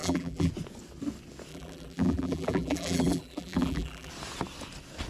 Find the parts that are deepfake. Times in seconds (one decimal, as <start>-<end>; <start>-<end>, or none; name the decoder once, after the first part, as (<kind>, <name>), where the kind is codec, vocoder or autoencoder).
0.0-0.5 (vocoder, BigVGAN v2); 1.5-4.1

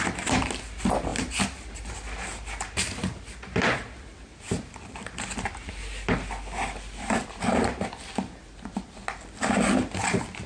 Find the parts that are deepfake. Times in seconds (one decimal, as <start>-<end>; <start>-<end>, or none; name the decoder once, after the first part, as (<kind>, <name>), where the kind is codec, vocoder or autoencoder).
none

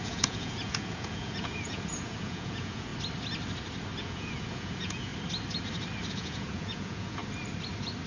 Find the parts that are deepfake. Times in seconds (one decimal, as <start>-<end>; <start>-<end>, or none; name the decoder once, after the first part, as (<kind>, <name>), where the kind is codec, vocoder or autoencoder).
0.0-2.9 (vocoder, Vocos); 4.0-5.1; 6.1-7.2

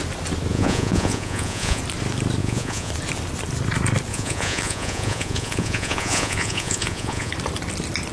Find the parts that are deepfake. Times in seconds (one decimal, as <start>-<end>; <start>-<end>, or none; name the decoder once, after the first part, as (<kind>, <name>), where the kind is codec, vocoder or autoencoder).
0.5-1.8 (vocoder, Vocos); 2.4-2.9; 4.1-7.3

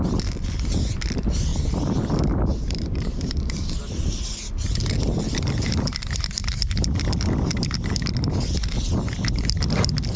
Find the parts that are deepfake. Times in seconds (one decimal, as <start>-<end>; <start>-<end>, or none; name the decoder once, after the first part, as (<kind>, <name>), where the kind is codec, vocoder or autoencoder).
1.5-2.0 (vocoder, BigVGAN v2); 2.5-4.3

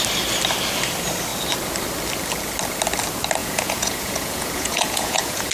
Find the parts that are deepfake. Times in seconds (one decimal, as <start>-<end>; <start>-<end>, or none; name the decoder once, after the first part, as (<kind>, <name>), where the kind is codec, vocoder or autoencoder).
3.4-5.5 (vocoder, Vocos)

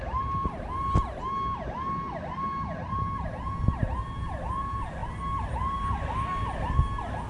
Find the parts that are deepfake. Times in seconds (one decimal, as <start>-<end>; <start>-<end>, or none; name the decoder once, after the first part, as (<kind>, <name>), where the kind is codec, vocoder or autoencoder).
none